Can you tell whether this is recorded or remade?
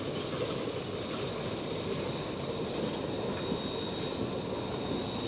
recorded